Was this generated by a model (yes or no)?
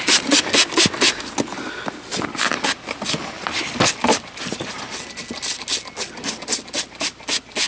no